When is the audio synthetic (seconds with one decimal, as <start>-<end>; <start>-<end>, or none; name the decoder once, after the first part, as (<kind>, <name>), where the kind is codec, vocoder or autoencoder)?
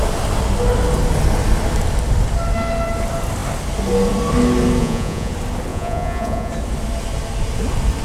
4.8-5.3 (vocoder, Vocos); 5.7-6.5